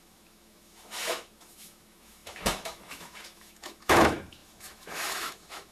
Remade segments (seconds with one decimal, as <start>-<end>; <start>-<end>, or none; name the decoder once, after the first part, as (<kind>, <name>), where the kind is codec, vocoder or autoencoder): 0.0-5.7 (autoencoder, DAC-VAE)